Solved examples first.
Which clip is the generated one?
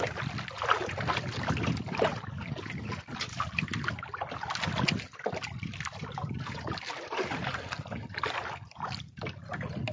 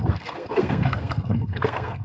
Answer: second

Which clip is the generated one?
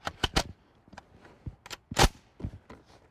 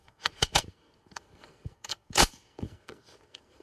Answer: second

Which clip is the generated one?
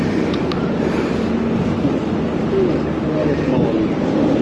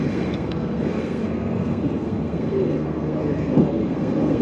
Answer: second